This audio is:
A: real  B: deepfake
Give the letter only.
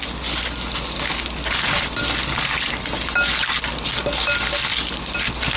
A